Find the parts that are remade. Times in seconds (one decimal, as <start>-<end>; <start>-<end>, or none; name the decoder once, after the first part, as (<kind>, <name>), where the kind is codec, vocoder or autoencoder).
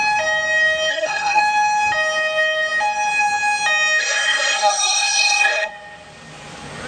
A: 0.9-1.4 (codec, SNAC); 4.0-5.7